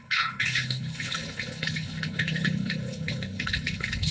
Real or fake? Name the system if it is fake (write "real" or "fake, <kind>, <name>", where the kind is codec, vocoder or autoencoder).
fake, codec, HILCodec